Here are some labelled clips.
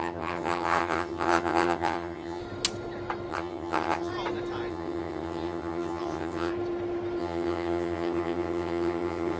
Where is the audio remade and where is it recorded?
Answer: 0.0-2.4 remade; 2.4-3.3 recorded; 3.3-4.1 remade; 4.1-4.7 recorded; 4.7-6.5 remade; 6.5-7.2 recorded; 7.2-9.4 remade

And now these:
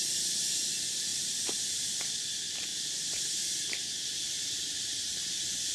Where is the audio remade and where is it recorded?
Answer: 0.0-2.7 recorded; 2.7-3.2 remade; 3.2-5.7 recorded

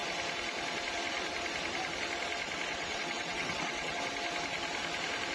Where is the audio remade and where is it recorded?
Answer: 0.0-2.7 recorded; 2.7-4.0 remade; 4.0-5.3 recorded